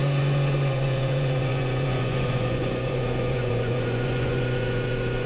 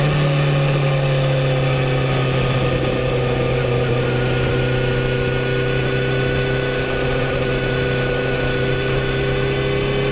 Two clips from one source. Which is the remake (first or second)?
first